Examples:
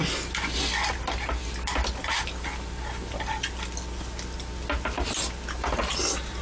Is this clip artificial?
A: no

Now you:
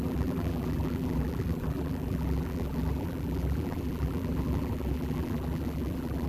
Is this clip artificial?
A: yes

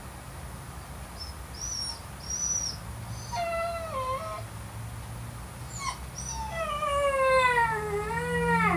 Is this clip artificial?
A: no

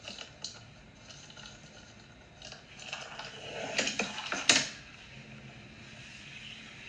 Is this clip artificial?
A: no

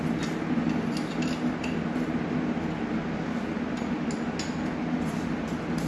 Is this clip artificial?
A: no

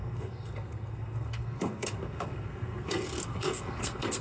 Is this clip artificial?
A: yes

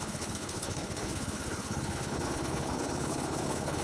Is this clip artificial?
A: yes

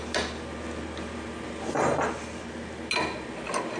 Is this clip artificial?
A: no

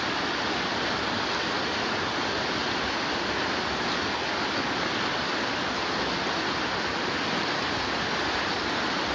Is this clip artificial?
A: no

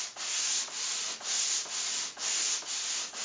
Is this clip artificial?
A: no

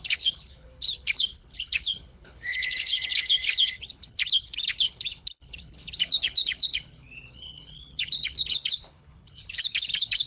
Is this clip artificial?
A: yes